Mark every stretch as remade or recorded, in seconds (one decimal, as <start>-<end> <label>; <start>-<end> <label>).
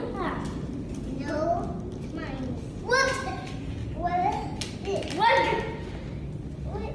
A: 0.0-6.9 recorded